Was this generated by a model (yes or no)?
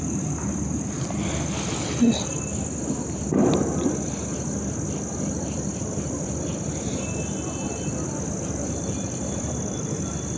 yes